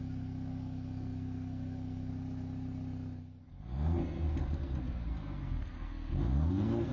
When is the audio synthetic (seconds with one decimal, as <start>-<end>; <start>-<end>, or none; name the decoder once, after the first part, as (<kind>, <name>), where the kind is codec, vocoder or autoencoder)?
0.0-2.1 (codec, SNAC); 3.2-6.9